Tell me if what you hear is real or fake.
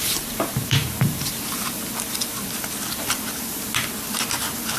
fake